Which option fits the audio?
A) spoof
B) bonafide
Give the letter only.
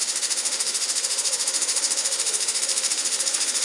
A